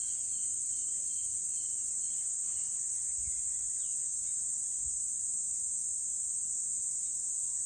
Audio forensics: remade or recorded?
recorded